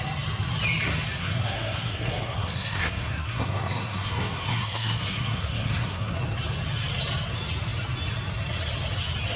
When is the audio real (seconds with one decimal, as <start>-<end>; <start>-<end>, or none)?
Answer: 0.0-1.2; 6.2-9.4